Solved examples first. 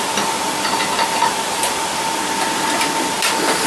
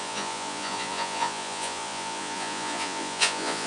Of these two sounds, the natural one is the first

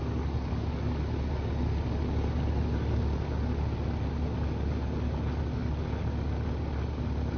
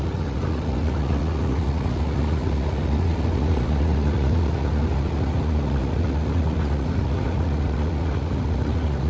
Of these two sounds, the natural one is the first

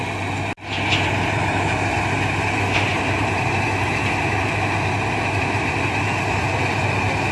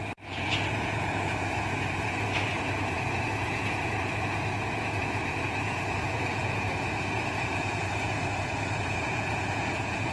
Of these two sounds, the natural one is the first